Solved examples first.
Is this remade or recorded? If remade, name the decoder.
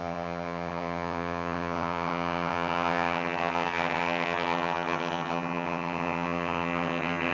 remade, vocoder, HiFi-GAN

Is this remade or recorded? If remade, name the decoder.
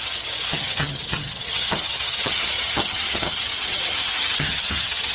remade, vocoder, HiFi-GAN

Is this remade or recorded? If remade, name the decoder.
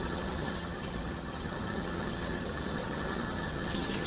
remade, vocoder, HiFi-GAN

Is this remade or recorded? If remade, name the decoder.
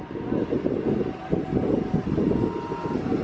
recorded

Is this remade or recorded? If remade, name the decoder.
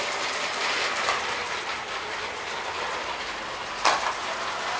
recorded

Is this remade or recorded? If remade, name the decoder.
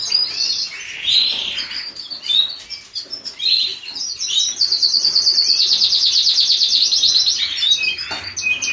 recorded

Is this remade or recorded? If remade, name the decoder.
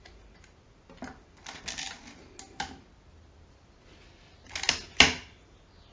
recorded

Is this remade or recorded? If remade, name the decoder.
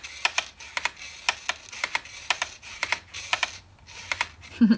recorded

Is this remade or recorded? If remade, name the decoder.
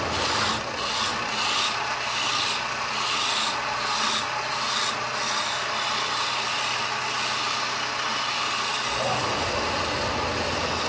recorded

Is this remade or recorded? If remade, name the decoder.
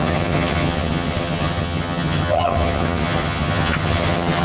remade, vocoder, HiFi-GAN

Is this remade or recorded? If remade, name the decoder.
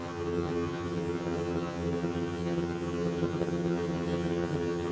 remade, vocoder, HiFi-GAN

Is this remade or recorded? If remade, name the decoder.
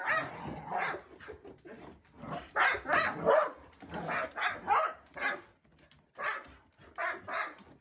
recorded